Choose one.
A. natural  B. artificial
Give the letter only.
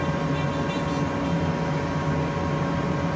A